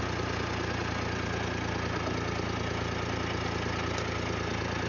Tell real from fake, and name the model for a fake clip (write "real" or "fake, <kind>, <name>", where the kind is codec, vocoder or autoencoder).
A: real